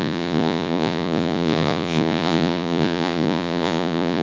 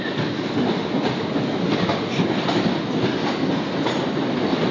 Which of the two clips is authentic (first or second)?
second